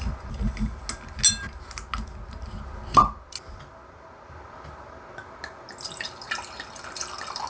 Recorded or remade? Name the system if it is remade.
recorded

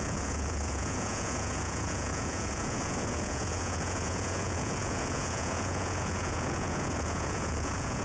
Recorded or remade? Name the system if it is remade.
remade, vocoder, Vocos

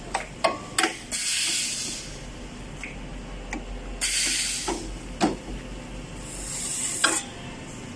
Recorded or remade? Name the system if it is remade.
recorded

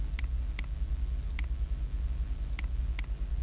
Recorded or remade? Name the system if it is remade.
recorded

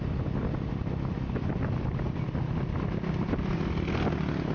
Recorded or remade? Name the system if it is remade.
recorded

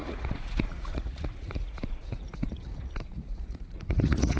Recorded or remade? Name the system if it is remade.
remade, vocoder, Vocos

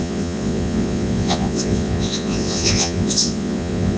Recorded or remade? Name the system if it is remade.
remade, vocoder, Vocos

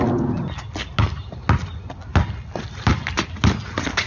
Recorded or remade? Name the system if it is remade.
recorded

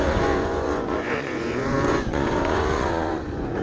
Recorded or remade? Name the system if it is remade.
remade, vocoder, Vocos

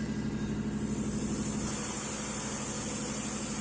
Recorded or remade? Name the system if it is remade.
recorded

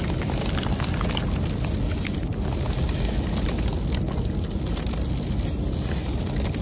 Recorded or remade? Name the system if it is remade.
recorded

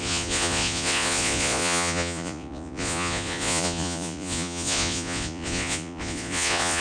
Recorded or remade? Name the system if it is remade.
remade, vocoder, Vocos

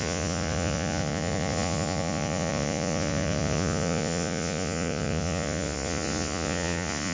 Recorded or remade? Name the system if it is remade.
remade, vocoder, Vocos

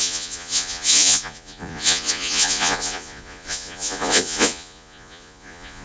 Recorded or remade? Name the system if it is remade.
remade, vocoder, Vocos